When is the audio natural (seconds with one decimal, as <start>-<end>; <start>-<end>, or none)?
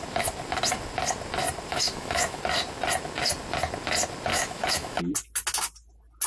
0.0-1.7; 2.4-4.3; 5.0-6.3